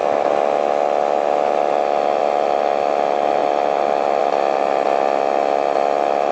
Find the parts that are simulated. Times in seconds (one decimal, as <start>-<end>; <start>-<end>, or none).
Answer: none